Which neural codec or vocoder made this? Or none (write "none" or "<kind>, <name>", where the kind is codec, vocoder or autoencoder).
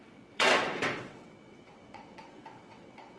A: vocoder, WaveNeXt